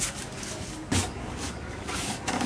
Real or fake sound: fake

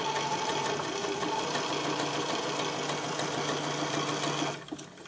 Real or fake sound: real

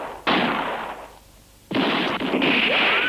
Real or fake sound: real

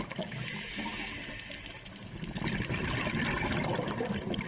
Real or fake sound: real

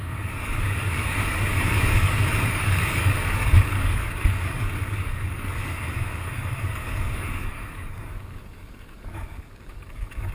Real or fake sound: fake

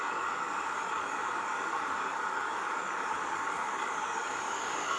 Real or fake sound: fake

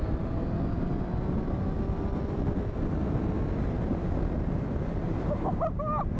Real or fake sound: real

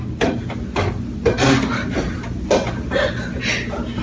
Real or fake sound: real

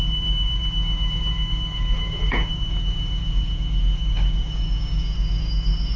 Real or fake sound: fake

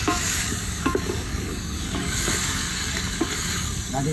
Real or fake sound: fake